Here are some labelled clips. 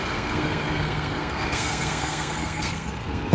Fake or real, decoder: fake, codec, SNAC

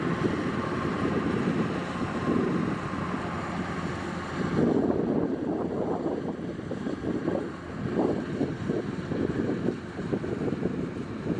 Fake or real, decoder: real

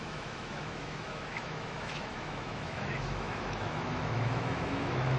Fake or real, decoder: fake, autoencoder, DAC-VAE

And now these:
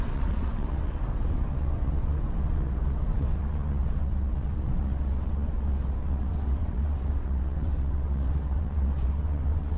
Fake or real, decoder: fake, vocoder, WaveNeXt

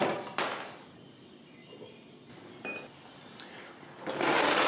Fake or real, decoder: real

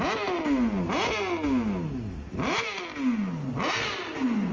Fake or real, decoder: real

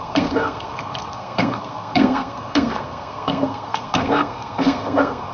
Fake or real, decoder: fake, codec, SNAC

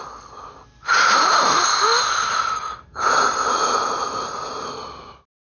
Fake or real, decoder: real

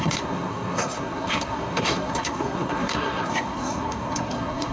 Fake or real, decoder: fake, codec, SNAC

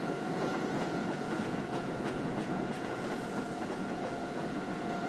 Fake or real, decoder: fake, vocoder, Vocos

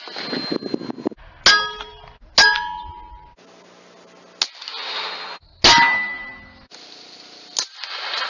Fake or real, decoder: real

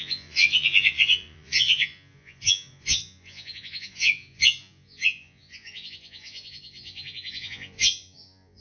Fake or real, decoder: fake, vocoder, Vocos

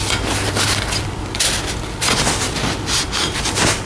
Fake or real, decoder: real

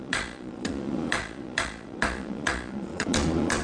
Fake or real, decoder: fake, vocoder, Vocos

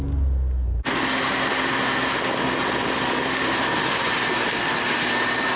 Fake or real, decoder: real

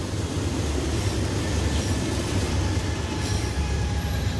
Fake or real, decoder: real